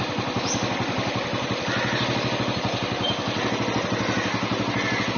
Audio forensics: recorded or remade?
recorded